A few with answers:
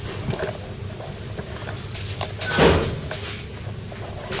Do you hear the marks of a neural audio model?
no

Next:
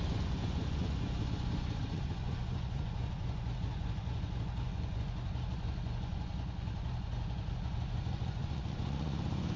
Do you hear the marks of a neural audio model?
yes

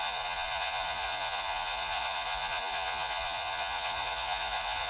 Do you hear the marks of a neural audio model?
yes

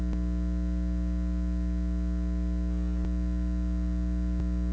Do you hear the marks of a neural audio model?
no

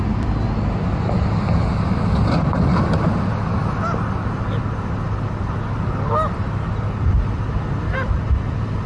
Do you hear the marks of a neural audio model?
no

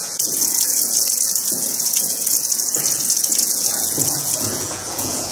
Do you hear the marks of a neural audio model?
yes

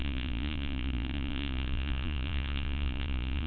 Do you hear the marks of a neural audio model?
yes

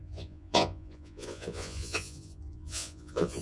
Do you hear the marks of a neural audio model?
yes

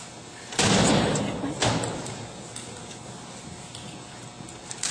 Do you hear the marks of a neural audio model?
no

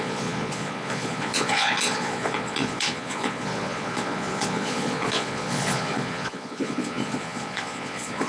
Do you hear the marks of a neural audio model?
yes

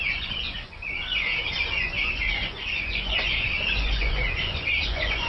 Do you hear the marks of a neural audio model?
yes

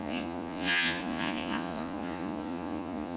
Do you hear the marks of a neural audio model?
yes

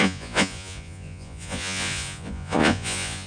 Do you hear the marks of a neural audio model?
yes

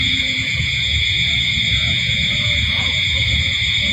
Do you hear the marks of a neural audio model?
yes